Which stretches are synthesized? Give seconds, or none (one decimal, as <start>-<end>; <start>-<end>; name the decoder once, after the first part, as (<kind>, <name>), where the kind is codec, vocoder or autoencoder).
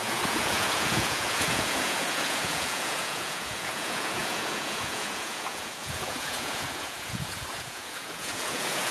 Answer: 0.0-8.9 (vocoder, Vocos)